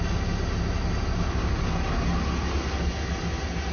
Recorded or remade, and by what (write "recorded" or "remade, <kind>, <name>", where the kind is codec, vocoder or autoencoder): recorded